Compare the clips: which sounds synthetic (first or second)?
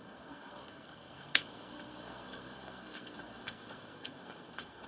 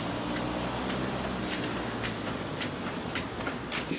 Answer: first